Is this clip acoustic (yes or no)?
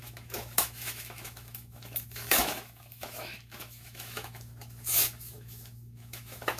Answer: no